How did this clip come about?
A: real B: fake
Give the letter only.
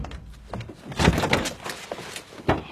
A